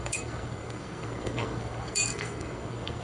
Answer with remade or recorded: remade